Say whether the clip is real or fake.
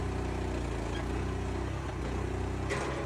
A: real